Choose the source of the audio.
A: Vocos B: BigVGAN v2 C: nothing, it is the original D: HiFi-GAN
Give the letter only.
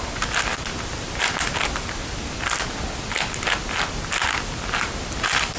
C